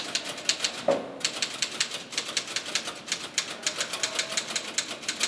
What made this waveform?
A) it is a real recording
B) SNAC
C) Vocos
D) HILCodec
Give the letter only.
A